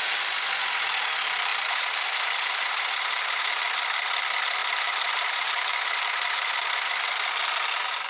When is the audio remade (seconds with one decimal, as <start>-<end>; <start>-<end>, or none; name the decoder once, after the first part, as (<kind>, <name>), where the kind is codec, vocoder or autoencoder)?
1.5-3.6 (vocoder, BigVGAN v2); 4.6-6.9

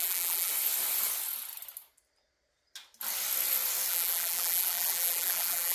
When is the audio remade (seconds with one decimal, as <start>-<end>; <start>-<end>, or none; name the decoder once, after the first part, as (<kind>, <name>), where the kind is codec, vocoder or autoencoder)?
0.0-0.5 (vocoder, BigVGAN v2); 3.9-5.7

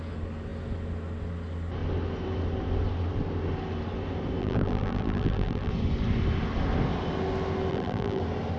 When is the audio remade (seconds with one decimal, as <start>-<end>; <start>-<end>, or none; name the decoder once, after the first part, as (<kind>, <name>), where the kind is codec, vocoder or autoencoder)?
4.4-5.7 (vocoder, BigVGAN v2); 7.7-8.2

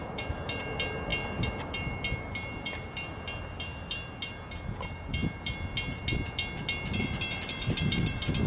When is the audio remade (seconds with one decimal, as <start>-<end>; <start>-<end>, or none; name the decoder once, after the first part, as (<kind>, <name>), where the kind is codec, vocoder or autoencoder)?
none